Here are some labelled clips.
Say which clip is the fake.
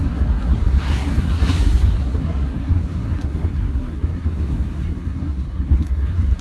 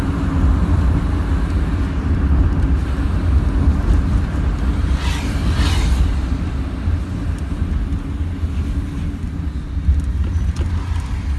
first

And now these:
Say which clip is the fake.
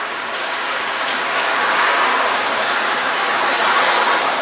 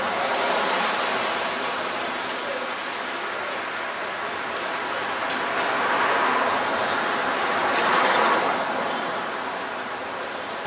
first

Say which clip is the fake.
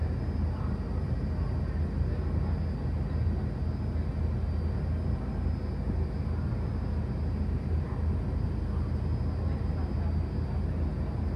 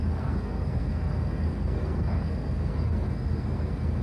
second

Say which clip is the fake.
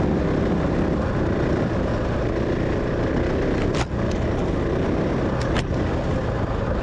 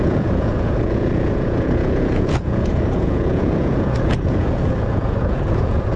second